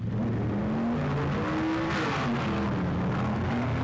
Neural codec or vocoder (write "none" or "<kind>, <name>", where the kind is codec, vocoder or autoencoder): none